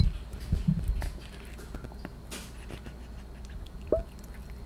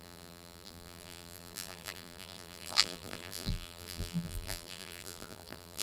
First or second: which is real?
first